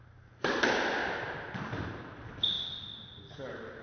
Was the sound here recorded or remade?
recorded